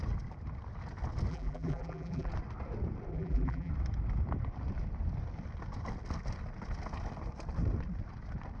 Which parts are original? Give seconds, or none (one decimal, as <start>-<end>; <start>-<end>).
0.0-1.3; 2.3-3.1; 3.7-8.6